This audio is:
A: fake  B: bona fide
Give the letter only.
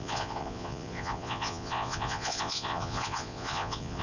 A